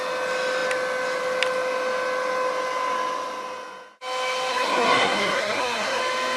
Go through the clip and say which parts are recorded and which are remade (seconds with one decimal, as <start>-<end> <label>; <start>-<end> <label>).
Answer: 0.0-4.5 recorded; 4.5-6.0 remade; 6.0-6.4 recorded